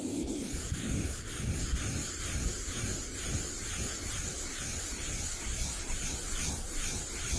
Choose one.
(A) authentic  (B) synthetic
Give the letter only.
A